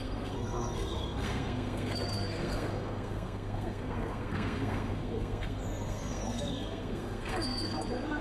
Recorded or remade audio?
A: remade